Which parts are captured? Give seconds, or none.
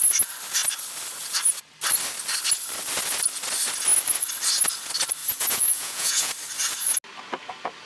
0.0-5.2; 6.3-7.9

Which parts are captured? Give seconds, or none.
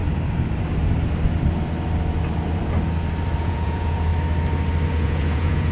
0.0-3.4; 4.1-4.9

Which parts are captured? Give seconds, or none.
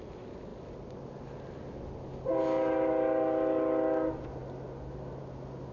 0.0-5.7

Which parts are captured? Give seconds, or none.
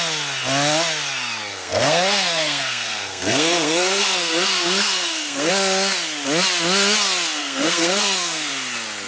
0.0-1.5; 5.5-7.4; 8.5-9.1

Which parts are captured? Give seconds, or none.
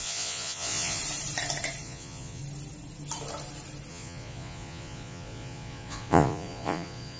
1.0-1.8; 2.4-3.9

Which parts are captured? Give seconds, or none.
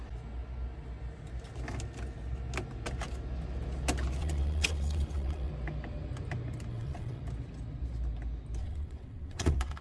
0.0-4.2; 5.5-6.7; 7.2-8.6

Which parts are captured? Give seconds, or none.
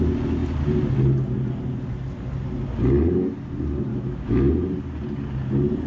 0.0-3.9; 4.5-5.9